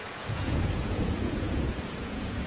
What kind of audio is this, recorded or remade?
remade